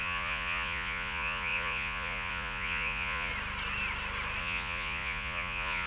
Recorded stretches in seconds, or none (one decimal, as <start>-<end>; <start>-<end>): 3.3-4.4